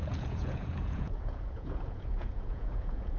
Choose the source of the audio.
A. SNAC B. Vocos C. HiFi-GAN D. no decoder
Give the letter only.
B